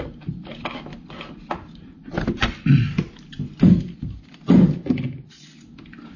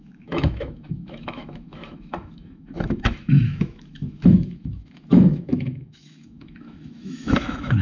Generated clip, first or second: second